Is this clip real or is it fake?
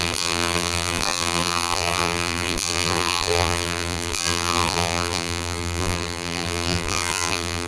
fake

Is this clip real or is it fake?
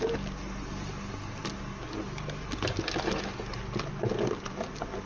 real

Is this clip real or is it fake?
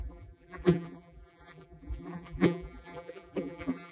fake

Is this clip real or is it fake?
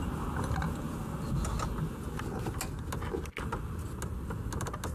real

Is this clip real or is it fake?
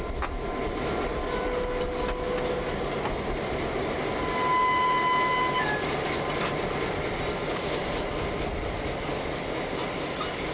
real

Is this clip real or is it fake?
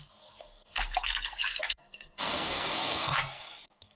fake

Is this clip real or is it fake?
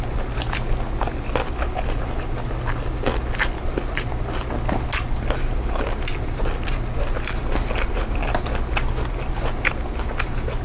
real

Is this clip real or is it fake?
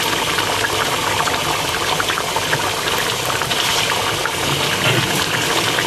real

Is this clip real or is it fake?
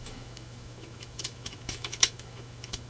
fake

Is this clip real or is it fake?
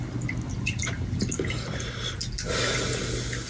real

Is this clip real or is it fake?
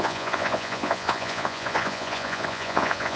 fake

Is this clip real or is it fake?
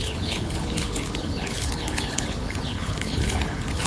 fake